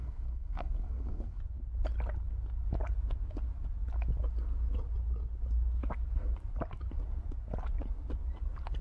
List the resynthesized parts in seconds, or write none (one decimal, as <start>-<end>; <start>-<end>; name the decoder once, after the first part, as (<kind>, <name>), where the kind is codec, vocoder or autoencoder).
0.0-1.4 (codec, SNAC)